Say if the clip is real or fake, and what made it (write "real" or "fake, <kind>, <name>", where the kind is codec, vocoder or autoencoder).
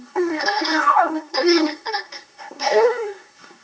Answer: fake, codec, SNAC